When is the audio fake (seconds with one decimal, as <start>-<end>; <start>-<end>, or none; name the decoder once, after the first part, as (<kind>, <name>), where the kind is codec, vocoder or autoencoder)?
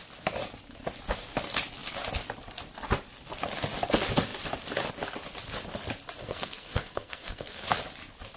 6.2-7.6 (codec, SNAC)